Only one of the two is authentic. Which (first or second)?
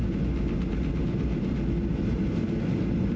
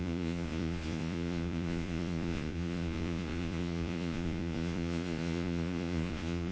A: first